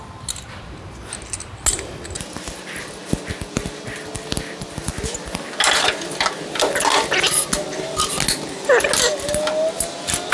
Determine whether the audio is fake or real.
real